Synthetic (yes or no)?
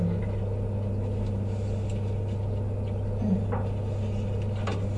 no